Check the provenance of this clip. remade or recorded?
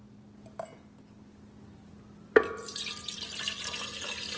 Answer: recorded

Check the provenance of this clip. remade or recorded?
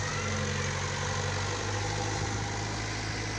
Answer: recorded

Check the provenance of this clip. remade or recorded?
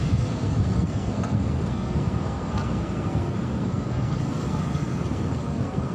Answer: remade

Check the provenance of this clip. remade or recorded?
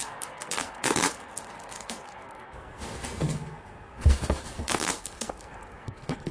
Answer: remade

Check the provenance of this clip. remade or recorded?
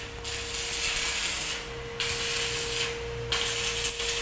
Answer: recorded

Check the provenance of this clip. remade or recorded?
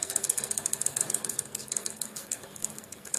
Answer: remade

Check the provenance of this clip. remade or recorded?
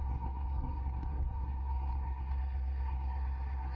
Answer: remade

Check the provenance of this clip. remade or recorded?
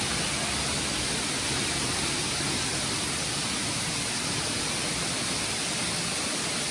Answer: recorded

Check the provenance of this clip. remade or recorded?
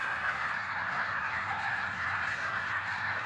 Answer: remade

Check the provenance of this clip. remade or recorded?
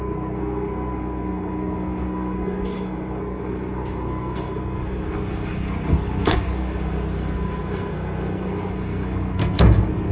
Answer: remade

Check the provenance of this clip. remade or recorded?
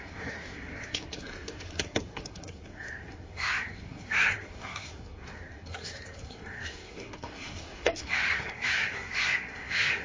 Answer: remade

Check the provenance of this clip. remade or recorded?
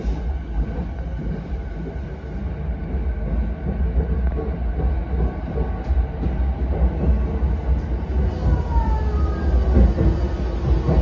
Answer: recorded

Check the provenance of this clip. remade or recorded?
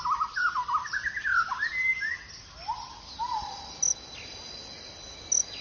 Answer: recorded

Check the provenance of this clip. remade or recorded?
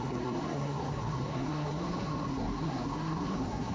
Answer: remade